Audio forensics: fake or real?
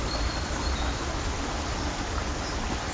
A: fake